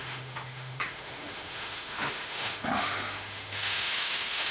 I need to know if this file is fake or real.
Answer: fake